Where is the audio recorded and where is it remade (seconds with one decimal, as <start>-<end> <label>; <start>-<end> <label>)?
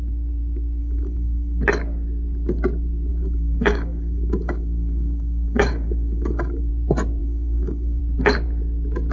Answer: 0.0-0.8 recorded; 0.8-1.6 remade; 1.6-3.1 recorded; 3.1-6.7 remade; 6.7-7.2 recorded; 7.2-8.0 remade; 8.0-9.1 recorded